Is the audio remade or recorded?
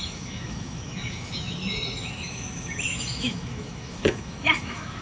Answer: remade